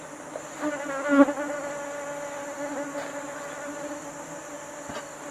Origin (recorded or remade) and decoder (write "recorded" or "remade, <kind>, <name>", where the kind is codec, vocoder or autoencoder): recorded